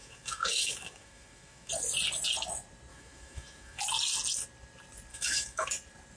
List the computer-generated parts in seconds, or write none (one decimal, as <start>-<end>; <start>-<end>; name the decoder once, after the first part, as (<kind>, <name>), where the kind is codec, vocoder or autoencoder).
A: 0.0-1.7 (autoencoder, DAC-VAE); 2.9-3.8; 5.1-5.7